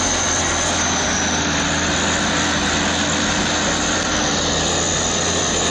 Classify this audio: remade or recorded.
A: recorded